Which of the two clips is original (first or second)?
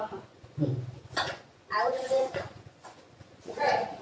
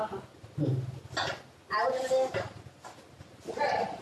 second